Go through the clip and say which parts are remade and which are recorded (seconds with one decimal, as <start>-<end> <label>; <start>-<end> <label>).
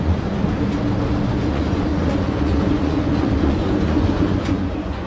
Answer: 0.0-0.4 remade; 0.4-1.2 recorded; 1.2-5.1 remade